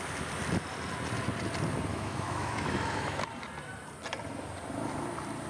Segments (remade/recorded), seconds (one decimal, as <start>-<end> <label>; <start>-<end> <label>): 0.0-1.9 recorded; 1.9-3.2 remade; 3.2-5.5 recorded